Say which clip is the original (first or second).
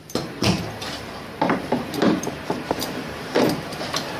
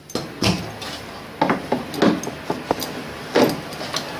second